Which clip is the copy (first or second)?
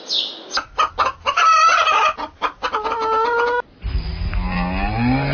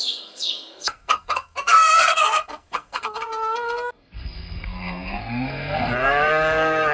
second